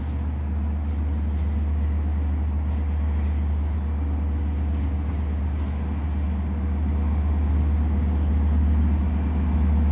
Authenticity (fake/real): real